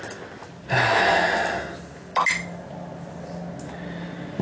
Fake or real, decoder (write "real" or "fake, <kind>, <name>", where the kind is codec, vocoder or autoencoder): real